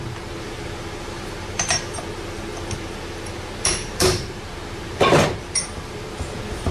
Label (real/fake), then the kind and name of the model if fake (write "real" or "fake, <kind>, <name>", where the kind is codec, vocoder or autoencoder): fake, vocoder, BigVGAN v2